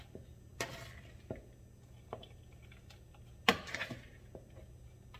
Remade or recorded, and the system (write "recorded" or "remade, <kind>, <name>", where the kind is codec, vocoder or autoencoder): recorded